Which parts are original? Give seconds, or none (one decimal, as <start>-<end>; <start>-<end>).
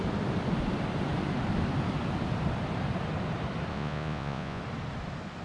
0.0-3.7; 4.6-5.4